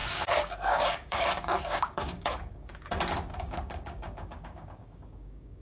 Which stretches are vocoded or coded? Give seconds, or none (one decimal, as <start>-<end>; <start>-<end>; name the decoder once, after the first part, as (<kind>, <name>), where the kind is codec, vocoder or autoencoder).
0.0-2.9 (codec, DAC); 3.3-5.6